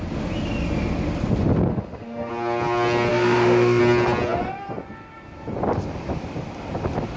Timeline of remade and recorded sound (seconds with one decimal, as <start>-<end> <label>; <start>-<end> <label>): 0.0-1.7 recorded; 1.7-2.3 remade; 2.3-3.1 recorded; 3.1-3.8 remade; 3.8-7.2 recorded

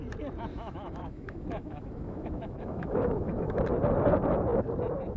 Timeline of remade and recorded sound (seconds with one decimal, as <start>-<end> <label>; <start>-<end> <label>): 0.0-0.5 recorded; 0.5-3.6 remade; 3.6-5.2 recorded

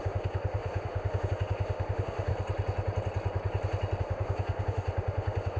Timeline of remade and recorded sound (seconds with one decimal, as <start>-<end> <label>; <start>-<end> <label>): 0.0-2.3 remade; 2.3-4.0 recorded; 4.0-5.6 remade

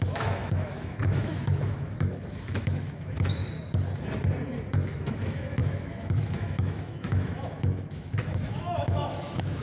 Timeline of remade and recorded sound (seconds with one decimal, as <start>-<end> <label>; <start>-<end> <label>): 0.0-3.4 remade; 3.4-4.7 recorded; 4.7-9.6 remade

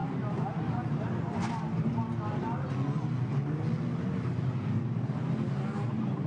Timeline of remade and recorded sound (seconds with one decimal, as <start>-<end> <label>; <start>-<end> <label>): 0.0-6.3 recorded

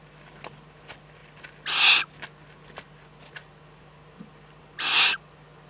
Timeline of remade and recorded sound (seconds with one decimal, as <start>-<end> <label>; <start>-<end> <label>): 0.0-5.7 recorded